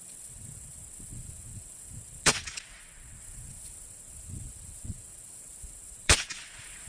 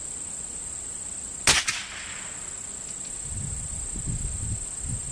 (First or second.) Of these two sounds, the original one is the second